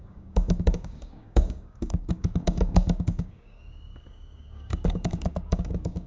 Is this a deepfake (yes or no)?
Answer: yes